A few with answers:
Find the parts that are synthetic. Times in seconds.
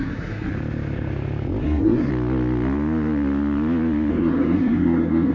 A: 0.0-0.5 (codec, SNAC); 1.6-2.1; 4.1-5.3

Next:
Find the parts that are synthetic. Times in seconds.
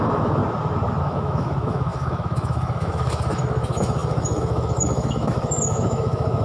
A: 0.0-0.4 (autoencoder, DAC-VAE); 1.0-6.4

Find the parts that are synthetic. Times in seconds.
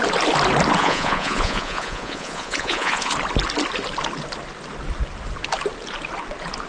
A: 0.8-3.1 (vocoder, Vocos)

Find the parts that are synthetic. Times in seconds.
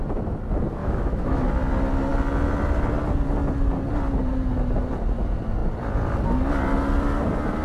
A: 0.8-1.5 (autoencoder, DAC-VAE)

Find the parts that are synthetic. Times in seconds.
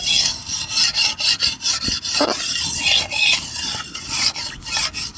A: 1.1-4.2 (vocoder, BigVGAN v2)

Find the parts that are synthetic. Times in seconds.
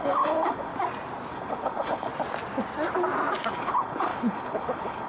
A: 0.0-0.7 (codec, HILCodec); 1.3-2.1; 3.5-5.1